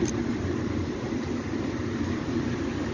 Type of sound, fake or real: real